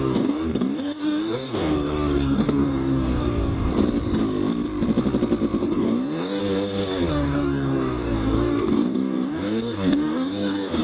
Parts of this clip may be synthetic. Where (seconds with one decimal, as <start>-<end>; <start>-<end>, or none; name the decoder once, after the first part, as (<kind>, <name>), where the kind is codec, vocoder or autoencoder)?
0.0-3.7 (codec, DAC); 5.6-6.4; 7.1-10.8